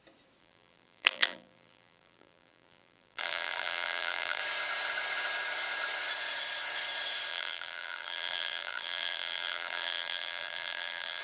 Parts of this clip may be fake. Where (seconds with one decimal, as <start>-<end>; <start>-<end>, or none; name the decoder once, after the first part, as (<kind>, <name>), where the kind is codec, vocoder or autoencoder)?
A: 0.4-4.4 (vocoder, BigVGAN v2); 7.3-11.2